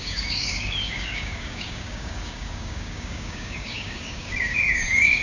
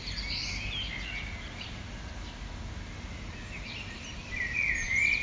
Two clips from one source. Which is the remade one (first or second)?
first